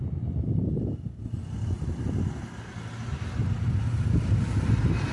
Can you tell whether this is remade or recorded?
recorded